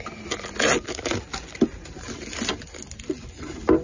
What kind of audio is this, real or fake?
real